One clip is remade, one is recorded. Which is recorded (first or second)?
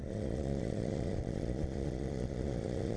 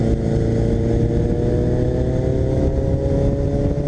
second